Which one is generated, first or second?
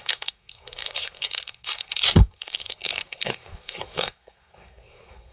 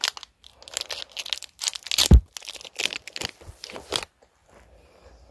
first